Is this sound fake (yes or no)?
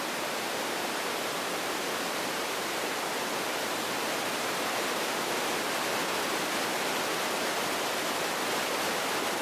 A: no